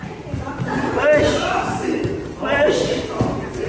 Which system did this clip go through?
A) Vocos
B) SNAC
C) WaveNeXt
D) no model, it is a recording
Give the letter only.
D